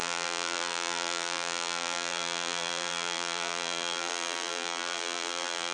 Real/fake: fake